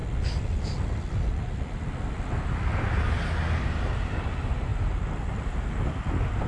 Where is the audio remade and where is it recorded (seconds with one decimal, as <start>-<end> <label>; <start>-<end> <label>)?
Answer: 0.0-6.5 recorded